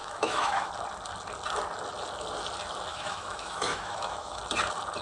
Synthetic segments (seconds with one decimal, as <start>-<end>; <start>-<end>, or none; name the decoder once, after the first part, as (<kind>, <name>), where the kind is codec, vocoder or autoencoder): 0.0-0.7 (autoencoder, DAC-VAE); 2.9-4.4